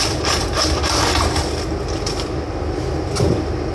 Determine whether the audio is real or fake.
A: real